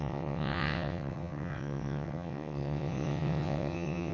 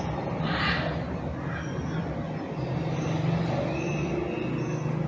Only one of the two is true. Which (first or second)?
second